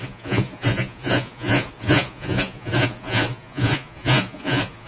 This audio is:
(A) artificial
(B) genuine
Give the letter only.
A